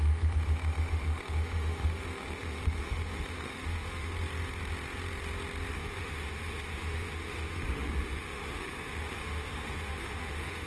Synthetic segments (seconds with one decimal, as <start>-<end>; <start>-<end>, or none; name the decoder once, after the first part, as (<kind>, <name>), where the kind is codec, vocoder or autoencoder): 0.0-4.1 (autoencoder, DAC-VAE); 5.7-10.7